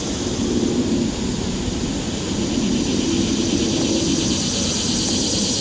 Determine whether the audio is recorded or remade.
recorded